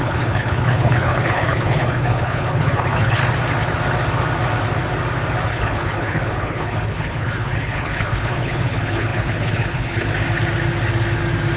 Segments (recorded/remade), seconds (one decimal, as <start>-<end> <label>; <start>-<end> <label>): 0.0-3.2 remade; 3.2-5.5 recorded; 5.5-10.1 remade; 10.1-11.6 recorded